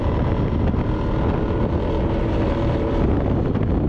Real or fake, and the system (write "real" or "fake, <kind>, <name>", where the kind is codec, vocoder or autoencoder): real